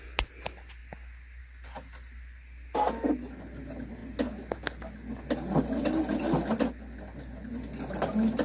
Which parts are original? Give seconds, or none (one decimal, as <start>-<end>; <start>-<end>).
0.0-8.4

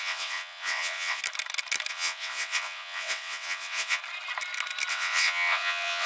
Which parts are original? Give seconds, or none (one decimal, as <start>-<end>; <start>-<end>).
1.2-1.9; 4.0-4.9

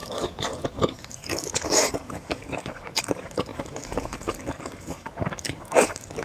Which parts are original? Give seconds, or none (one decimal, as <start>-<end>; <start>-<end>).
none

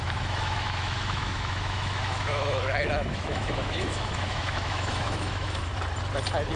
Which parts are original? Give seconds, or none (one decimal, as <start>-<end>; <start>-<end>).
5.7-6.6

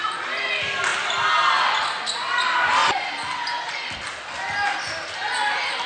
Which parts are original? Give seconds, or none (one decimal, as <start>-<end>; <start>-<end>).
0.0-5.9

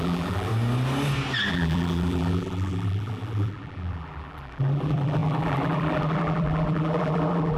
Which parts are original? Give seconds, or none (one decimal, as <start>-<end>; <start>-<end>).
0.5-1.5

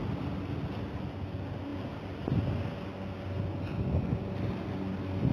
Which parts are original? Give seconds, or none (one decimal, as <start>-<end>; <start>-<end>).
0.0-5.3

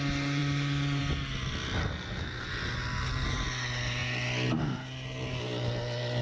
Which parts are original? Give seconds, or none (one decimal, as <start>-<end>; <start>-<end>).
0.0-1.8; 2.5-6.2